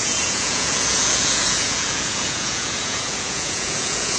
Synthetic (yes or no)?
yes